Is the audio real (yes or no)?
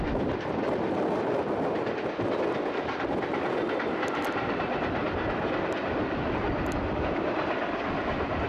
no